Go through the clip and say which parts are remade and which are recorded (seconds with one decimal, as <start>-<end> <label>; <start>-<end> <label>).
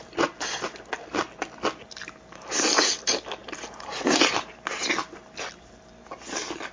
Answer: 0.0-6.7 recorded